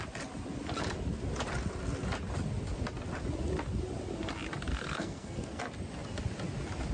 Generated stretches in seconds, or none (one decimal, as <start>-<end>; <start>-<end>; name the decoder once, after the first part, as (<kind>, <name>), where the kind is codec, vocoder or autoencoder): 4.7-5.6 (codec, SNAC)